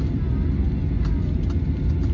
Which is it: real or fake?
real